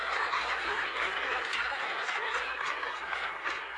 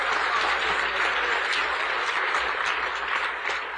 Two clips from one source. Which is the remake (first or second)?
first